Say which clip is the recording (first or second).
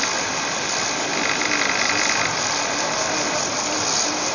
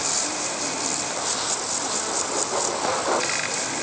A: first